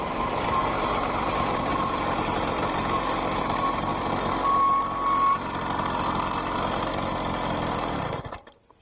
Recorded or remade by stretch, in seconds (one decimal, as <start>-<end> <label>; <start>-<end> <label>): 0.0-3.9 remade; 3.9-8.2 recorded; 8.2-8.8 remade